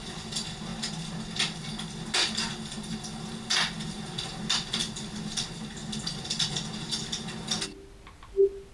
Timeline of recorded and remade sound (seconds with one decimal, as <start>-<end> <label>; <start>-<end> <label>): 0.0-8.7 recorded